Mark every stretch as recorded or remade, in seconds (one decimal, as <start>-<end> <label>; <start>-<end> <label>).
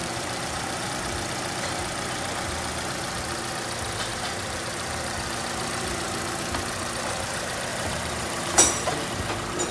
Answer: 0.0-0.9 remade; 0.9-4.1 recorded; 4.1-5.2 remade; 5.2-7.7 recorded; 7.7-9.1 remade; 9.1-9.7 recorded